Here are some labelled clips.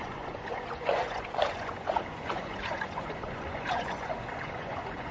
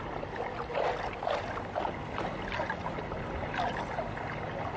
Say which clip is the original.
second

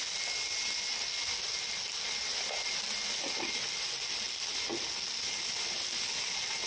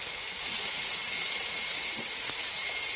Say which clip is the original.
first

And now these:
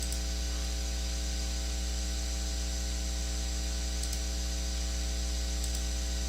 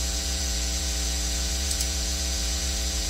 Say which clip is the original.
first